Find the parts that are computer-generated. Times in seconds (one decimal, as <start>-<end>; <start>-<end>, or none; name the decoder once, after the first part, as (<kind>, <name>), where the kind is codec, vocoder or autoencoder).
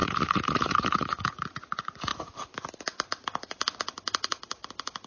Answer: 0.0-2.1 (vocoder, Vocos)